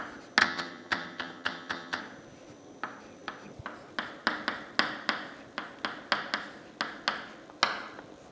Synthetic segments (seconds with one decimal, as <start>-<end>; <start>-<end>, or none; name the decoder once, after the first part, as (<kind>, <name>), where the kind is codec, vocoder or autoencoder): 0.4-2.0 (vocoder, HiFi-GAN)